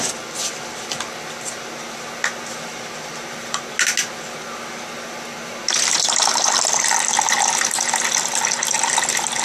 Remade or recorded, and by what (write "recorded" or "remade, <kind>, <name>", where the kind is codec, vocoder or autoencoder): recorded